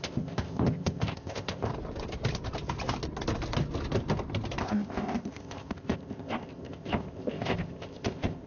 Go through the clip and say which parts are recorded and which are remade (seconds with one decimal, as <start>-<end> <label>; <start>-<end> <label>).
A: 0.0-1.7 remade; 1.7-4.6 recorded; 4.6-8.5 remade